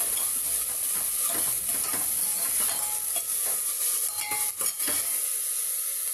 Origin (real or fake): real